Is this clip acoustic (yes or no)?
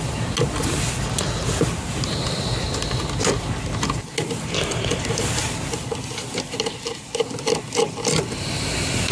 yes